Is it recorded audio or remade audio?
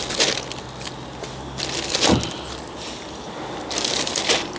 recorded